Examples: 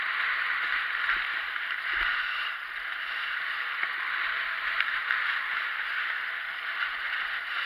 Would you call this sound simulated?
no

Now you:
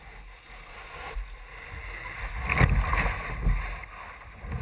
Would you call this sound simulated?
no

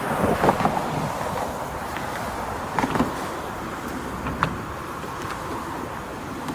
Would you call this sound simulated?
no